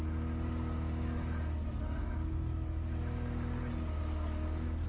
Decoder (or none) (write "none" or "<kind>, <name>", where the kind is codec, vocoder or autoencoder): none